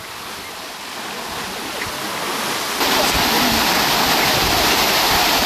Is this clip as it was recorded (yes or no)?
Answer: yes